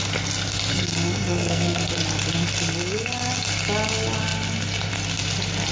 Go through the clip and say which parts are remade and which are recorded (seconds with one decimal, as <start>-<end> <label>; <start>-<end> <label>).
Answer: 0.0-0.7 recorded; 0.7-1.9 remade; 1.9-5.7 recorded